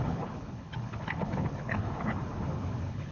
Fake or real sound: fake